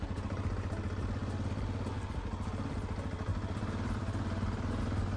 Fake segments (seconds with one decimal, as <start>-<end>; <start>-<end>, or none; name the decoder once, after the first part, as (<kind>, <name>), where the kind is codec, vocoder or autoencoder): 3.3-4.8 (vocoder, BigVGAN v2)